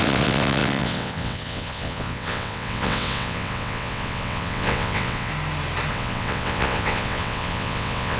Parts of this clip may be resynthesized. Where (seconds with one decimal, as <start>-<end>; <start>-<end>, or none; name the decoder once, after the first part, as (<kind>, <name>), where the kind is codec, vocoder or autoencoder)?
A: 0.0-5.3 (vocoder, WaveNeXt); 5.9-8.2